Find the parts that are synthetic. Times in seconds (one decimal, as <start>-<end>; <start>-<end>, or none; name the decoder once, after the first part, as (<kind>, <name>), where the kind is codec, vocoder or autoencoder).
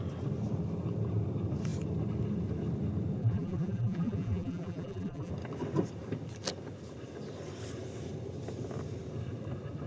3.2-5.3 (vocoder, BigVGAN v2)